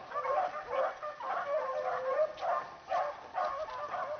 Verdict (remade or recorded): recorded